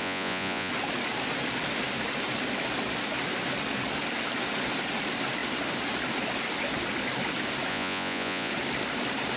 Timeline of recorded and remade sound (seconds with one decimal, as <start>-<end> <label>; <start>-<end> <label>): 0.0-0.7 remade; 0.7-7.7 recorded; 7.7-8.5 remade; 8.5-9.4 recorded